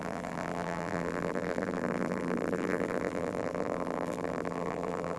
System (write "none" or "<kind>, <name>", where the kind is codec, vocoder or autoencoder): vocoder, BigVGAN v2